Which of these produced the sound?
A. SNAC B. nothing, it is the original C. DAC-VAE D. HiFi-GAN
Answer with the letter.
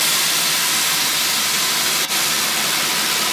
B